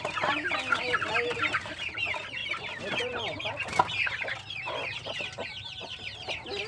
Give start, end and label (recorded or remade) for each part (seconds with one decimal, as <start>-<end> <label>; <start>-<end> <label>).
0.0-6.7 recorded